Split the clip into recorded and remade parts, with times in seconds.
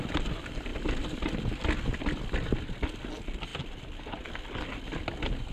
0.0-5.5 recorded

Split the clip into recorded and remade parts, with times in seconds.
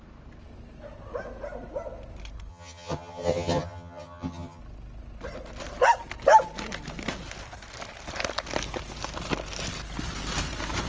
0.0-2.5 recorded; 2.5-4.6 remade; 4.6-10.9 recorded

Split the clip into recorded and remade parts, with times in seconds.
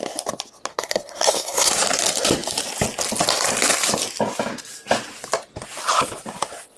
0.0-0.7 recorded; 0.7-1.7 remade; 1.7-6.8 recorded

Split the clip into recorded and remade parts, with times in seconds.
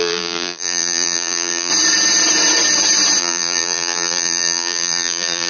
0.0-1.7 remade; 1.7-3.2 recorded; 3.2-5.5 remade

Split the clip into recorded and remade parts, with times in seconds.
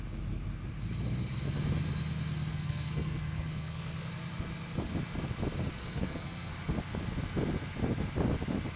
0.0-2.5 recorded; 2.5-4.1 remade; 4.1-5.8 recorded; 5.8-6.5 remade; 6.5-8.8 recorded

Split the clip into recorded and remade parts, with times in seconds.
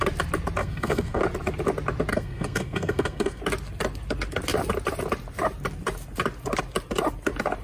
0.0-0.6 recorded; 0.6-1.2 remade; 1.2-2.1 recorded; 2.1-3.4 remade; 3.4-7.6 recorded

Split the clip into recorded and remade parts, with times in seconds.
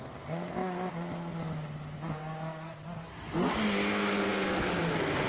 0.0-5.3 recorded